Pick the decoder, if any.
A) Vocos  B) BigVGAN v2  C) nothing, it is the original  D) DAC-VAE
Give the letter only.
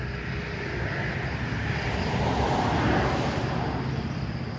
C